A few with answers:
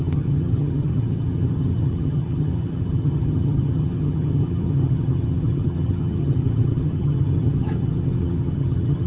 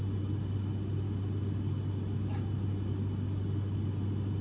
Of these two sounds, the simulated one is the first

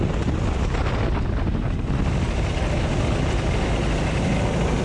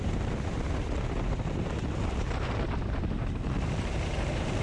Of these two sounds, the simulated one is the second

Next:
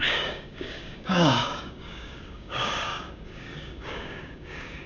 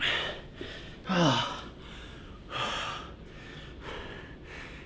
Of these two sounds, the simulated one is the first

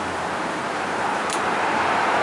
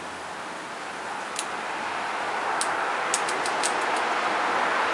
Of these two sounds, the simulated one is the first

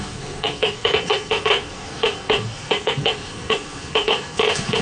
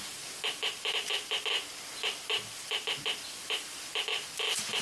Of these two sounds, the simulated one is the first